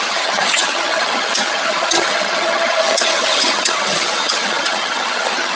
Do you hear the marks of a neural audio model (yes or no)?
yes